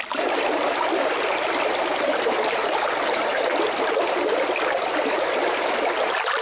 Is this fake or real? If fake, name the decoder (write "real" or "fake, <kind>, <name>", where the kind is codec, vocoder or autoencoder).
real